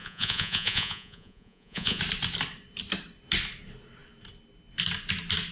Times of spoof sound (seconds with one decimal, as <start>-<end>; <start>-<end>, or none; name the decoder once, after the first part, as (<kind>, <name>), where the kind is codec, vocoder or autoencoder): 0.0-2.0 (vocoder, Vocos)